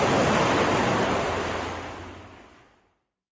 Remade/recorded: remade